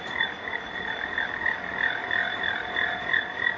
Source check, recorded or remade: remade